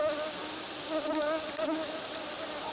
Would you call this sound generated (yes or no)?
no